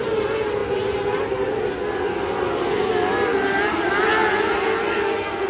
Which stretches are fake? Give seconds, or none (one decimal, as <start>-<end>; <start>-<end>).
3.3-3.9